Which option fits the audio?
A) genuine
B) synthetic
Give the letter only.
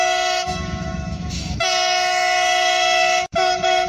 B